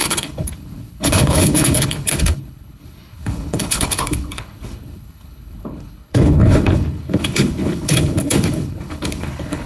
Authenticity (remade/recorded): remade